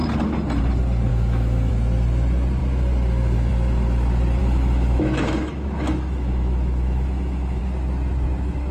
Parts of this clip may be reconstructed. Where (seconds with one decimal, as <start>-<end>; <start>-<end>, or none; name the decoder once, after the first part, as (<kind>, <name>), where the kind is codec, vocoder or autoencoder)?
1.1-1.7 (autoencoder, DAC-VAE); 4.4-7.6